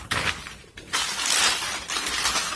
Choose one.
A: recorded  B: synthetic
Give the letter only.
A